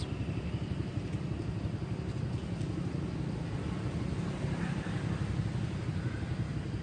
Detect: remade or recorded recorded